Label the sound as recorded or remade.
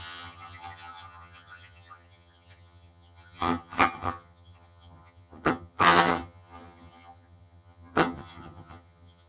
remade